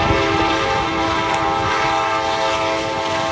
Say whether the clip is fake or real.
real